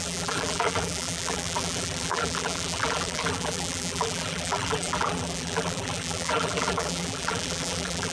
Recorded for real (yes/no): no